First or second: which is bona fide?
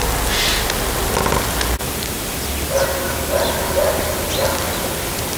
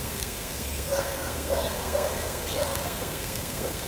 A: first